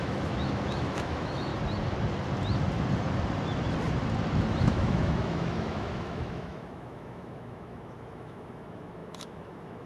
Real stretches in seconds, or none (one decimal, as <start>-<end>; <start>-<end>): 1.5-4.6